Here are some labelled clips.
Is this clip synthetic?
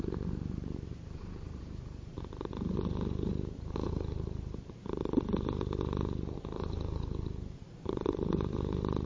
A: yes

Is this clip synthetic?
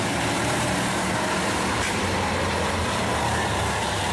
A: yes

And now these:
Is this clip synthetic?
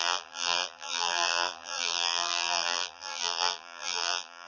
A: yes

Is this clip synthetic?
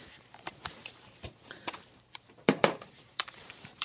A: yes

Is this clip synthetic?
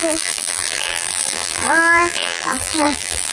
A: yes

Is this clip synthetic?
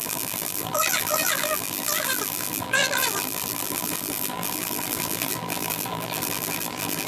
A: yes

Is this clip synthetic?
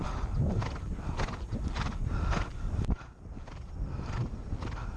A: no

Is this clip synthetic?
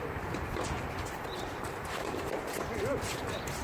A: yes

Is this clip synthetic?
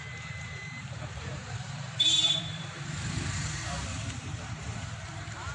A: yes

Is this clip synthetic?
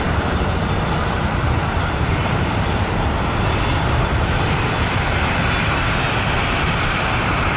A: yes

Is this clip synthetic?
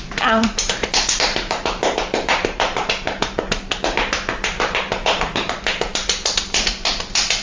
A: yes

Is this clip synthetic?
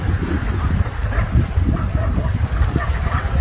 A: yes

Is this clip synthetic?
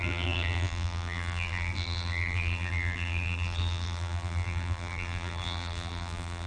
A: yes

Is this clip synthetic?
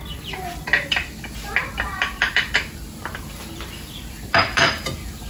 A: yes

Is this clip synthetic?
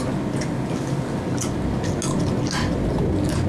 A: no